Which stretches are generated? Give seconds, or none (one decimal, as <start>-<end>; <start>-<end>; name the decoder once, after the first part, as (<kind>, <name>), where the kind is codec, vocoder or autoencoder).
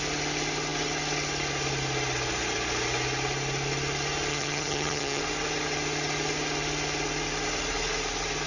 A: 4.3-5.2 (vocoder, HiFi-GAN)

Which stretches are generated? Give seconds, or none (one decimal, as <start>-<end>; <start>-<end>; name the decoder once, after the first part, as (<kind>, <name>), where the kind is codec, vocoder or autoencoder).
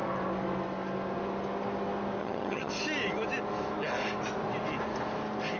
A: 2.2-2.7 (vocoder, HiFi-GAN)